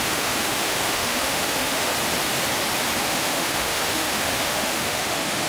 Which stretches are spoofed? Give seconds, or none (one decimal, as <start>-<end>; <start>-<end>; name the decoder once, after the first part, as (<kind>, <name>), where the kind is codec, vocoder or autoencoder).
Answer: 0.0-1.9 (autoencoder, DAC-VAE); 3.0-5.5